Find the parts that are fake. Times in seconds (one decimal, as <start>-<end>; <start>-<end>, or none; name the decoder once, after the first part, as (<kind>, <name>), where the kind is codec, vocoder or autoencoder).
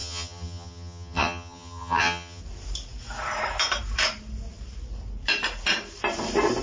0.0-2.4 (vocoder, HiFi-GAN)